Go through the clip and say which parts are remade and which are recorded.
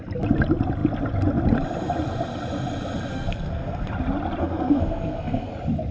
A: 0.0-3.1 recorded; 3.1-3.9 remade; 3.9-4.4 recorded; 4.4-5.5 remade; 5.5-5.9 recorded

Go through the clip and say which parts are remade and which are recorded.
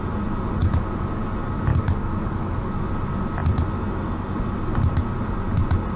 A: 0.0-0.6 recorded; 0.6-1.2 remade; 1.2-1.7 recorded; 1.7-2.8 remade; 2.8-6.0 recorded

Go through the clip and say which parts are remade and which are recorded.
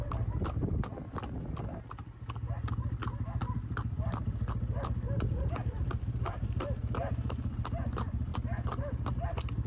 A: 0.0-9.7 recorded